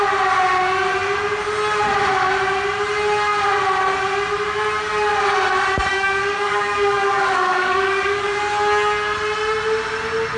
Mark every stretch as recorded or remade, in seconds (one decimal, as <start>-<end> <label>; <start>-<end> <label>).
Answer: 0.0-5.9 recorded; 5.9-8.4 remade; 8.4-10.4 recorded